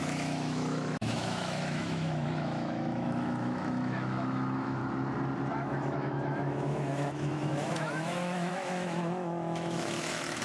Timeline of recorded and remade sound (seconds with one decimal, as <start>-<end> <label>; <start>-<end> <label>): 0.0-4.8 remade; 4.8-5.5 recorded; 5.5-10.4 remade